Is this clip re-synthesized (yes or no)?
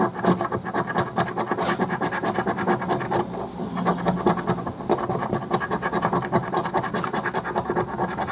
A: no